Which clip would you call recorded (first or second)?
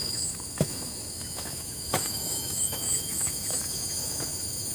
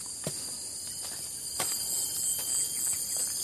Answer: second